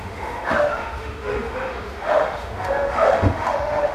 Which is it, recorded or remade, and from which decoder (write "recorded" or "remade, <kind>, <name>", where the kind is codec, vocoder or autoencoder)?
remade, autoencoder, DAC-VAE